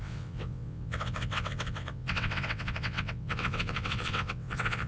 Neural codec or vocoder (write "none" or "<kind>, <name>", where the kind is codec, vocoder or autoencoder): vocoder, WaveNeXt